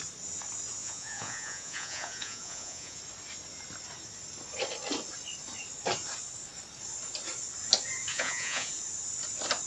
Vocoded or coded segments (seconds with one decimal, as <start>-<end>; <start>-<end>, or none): 0.8-3.0; 8.1-8.7